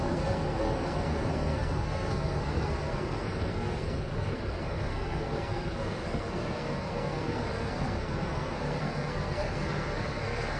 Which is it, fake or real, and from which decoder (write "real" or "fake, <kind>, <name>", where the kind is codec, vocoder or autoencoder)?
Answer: fake, codec, SNAC